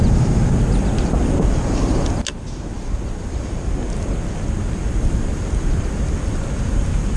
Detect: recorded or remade recorded